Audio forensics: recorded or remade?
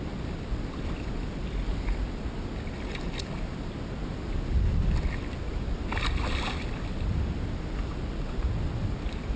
recorded